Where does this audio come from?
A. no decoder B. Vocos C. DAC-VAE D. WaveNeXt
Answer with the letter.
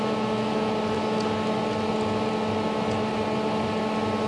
A